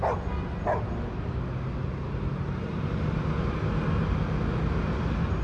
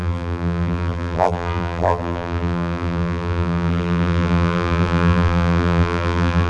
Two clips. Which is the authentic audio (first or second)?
first